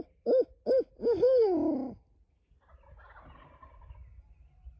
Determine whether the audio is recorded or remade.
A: recorded